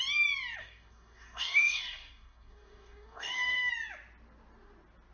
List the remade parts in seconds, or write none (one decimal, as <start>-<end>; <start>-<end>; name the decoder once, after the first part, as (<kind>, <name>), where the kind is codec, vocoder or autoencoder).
0.6-3.7 (codec, DAC)